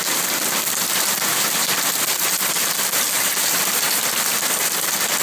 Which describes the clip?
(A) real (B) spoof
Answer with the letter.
B